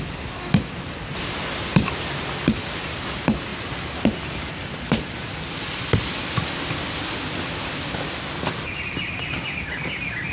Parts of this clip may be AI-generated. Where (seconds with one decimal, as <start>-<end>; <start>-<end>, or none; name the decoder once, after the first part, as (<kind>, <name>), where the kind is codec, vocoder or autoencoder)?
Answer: none